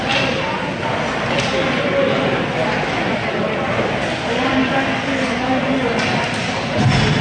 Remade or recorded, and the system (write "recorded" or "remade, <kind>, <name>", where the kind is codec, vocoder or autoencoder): recorded